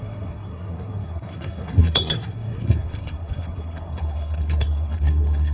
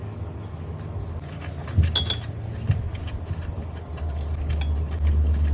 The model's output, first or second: first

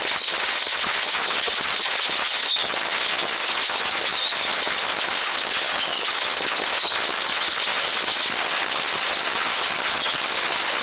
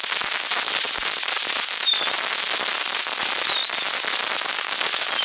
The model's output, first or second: first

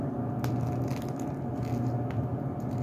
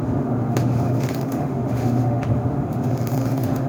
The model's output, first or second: second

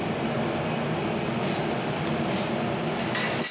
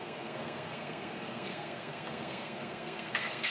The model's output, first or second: second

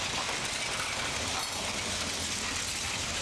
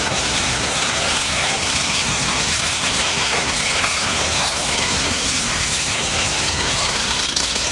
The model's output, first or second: second